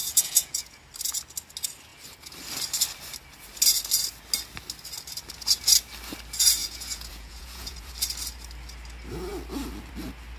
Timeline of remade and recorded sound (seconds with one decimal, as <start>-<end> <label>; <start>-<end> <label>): 0.0-0.8 remade; 0.8-6.6 recorded; 6.6-7.9 remade; 7.9-10.4 recorded